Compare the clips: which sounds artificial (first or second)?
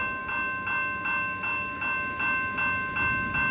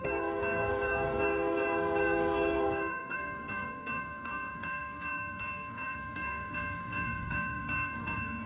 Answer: second